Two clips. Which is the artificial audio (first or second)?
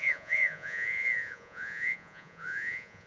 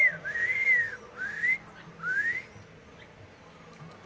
first